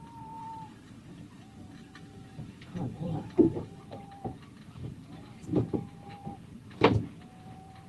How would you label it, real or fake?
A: fake